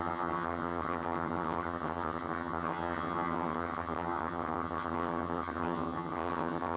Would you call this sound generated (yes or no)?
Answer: yes